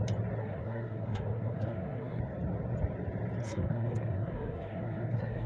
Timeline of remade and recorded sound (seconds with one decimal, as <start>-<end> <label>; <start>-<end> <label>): 0.0-0.4 recorded; 0.4-2.2 remade; 2.2-3.4 recorded; 3.4-5.5 remade